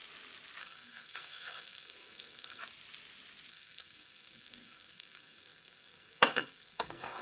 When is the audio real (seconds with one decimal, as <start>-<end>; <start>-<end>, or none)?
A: 0.0-0.6; 2.6-3.5